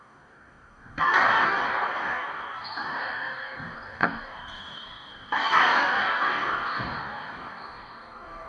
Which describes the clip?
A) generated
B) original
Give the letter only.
A